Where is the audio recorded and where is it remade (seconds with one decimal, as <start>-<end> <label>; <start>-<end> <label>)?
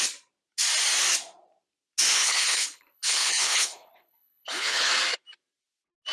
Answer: 0.0-2.1 recorded; 2.1-4.9 remade; 4.9-6.1 recorded